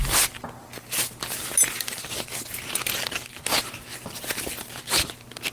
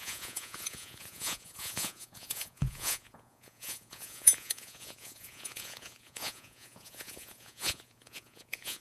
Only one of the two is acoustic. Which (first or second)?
first